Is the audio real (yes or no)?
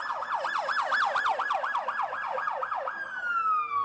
yes